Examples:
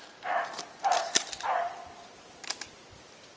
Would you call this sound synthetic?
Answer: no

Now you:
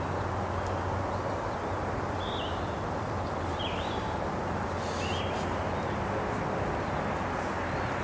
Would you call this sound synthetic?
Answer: no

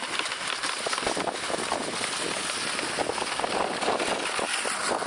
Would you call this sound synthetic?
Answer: no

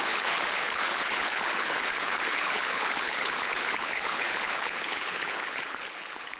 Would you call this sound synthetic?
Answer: yes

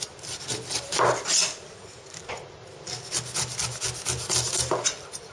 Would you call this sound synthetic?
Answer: no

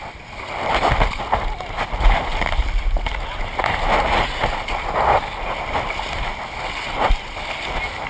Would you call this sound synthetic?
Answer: no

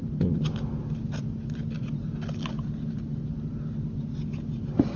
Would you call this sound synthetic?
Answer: no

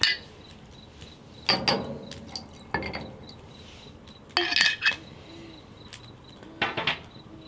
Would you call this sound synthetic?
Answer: no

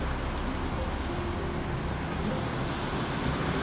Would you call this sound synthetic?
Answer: no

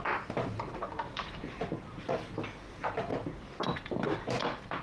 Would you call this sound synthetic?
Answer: no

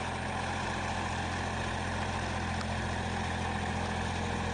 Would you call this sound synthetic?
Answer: no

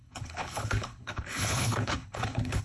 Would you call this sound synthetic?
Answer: yes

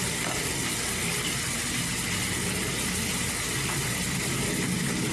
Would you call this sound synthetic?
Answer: no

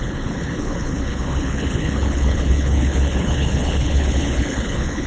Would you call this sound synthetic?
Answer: yes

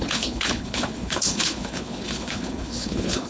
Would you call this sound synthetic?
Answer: yes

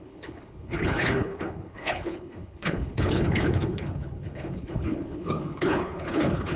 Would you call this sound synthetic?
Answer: yes